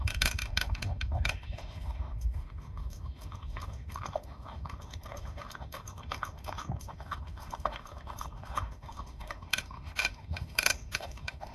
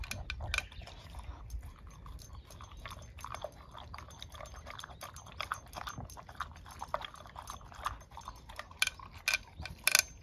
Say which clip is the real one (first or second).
second